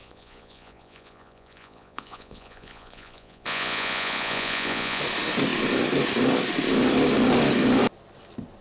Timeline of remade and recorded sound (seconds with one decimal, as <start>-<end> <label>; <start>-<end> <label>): 0.0-5.0 remade; 5.0-8.6 recorded